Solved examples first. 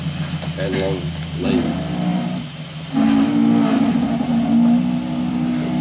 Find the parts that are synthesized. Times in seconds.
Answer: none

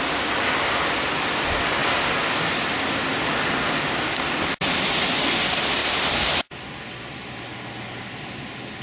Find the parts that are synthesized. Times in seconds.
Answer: none

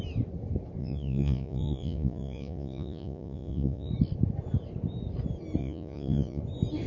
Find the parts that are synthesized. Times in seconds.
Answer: 0.8-3.9 (vocoder, Vocos); 5.6-6.4